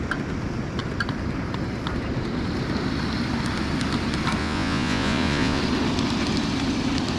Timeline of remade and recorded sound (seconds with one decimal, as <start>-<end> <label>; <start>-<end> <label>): 0.0-4.4 recorded; 4.4-5.6 remade; 5.6-7.2 recorded